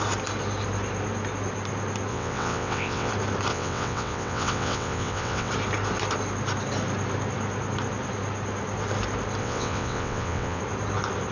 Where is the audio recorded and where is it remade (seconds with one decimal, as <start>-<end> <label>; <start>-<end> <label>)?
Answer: 0.0-2.1 recorded; 2.1-3.1 remade; 3.1-3.5 recorded; 3.5-5.5 remade; 5.5-9.4 recorded; 9.4-10.6 remade; 10.6-11.3 recorded